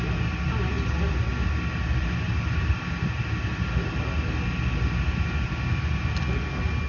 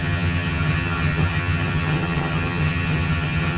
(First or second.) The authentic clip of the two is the first